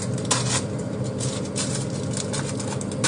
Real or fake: real